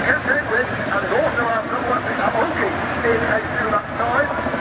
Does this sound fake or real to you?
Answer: fake